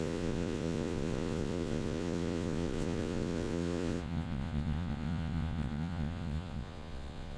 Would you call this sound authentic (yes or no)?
no